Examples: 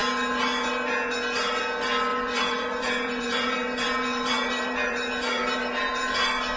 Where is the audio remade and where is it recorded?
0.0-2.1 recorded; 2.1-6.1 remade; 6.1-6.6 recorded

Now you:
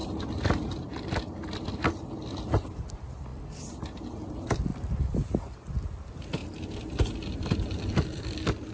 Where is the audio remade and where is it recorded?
0.0-8.7 remade